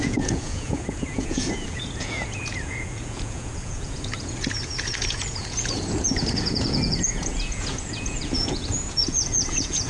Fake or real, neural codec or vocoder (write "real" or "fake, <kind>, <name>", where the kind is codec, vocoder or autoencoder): fake, vocoder, Vocos